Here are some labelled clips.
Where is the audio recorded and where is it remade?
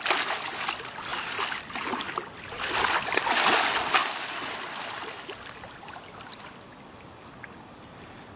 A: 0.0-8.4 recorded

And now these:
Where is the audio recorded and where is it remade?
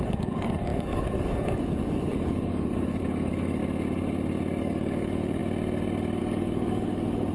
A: 0.0-3.6 remade; 3.6-4.6 recorded; 4.6-5.4 remade; 5.4-6.2 recorded; 6.2-7.3 remade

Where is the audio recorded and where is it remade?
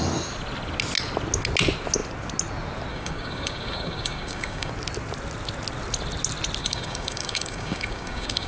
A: 0.0-2.9 recorded; 2.9-4.7 remade; 4.7-6.6 recorded; 6.6-8.5 remade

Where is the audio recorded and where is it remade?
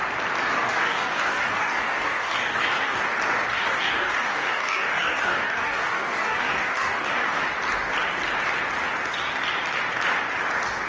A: 0.0-0.5 recorded; 0.5-3.0 remade; 3.0-3.5 recorded; 3.5-7.4 remade; 7.4-10.9 recorded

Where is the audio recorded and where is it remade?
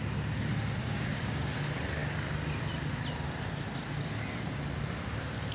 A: 0.0-0.8 recorded; 0.8-1.6 remade; 1.6-5.5 recorded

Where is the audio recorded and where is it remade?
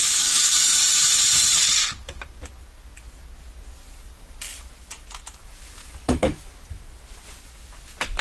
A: 0.0-0.8 remade; 0.8-5.8 recorded; 5.8-6.4 remade; 6.4-8.2 recorded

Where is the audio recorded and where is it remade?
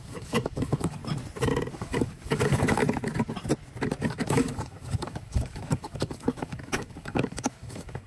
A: 0.0-1.0 remade; 1.0-1.7 recorded; 1.7-2.8 remade; 2.8-4.0 recorded; 4.0-8.1 remade